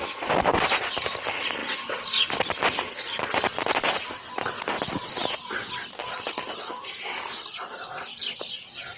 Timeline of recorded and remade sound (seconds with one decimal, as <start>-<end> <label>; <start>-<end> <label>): 0.0-9.0 recorded